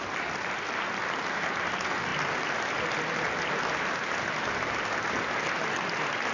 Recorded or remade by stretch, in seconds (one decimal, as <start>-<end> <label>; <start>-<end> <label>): 0.0-6.3 recorded